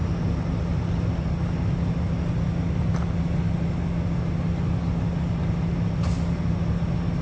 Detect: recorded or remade recorded